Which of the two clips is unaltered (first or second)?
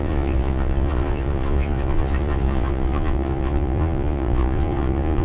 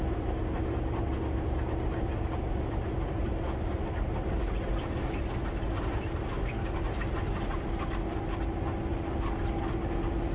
second